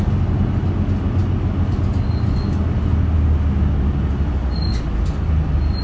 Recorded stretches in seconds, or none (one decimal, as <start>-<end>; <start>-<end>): 0.0-5.8